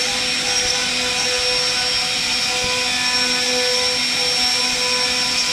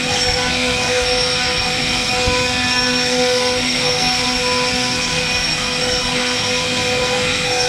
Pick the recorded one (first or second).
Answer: first